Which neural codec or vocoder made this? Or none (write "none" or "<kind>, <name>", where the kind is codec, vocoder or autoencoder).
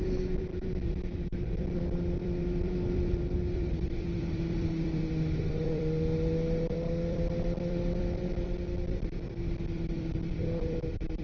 vocoder, BigVGAN v2